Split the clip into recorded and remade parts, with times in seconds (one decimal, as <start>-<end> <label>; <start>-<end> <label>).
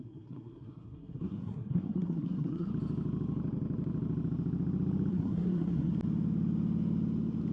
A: 0.0-2.7 remade; 2.7-5.1 recorded; 5.1-5.9 remade; 5.9-7.5 recorded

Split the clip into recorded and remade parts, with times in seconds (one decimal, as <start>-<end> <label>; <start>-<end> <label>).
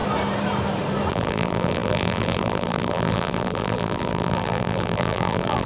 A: 0.0-1.1 recorded; 1.1-5.7 remade